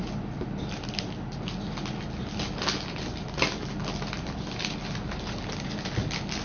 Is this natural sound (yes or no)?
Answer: yes